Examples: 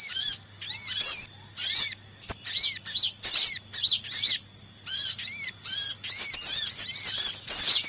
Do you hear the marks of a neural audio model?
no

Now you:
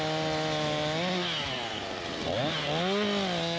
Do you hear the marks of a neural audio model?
no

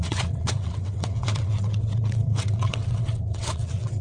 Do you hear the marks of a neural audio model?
yes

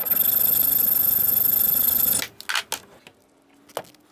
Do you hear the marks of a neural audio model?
no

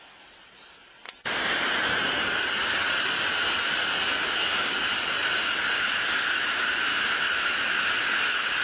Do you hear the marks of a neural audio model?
no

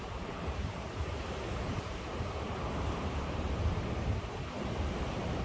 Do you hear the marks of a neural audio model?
yes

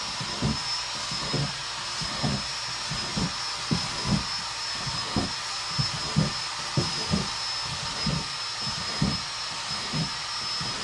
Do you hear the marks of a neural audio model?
no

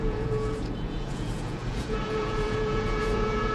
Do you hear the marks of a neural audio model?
yes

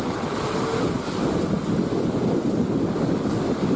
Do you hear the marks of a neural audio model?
no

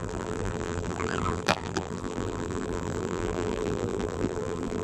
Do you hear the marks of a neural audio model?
yes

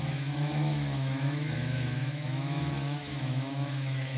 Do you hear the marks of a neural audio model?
yes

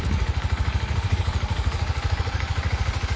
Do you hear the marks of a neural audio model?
yes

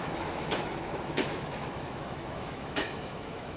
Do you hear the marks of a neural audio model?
yes